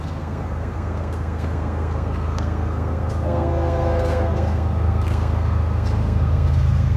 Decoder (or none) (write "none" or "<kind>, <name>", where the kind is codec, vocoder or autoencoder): codec, SNAC